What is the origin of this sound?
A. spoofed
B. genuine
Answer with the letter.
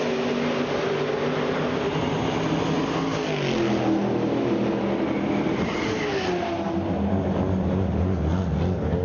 B